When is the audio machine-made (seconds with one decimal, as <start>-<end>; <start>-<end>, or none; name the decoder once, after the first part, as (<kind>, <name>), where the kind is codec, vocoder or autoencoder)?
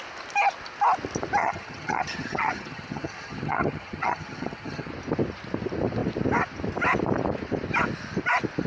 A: 1.4-4.9 (vocoder, HiFi-GAN)